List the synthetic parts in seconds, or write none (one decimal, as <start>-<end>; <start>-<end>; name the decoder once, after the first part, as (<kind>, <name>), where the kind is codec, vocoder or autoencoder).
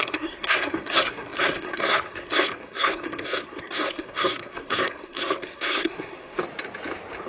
0.0-6.4 (codec, SNAC)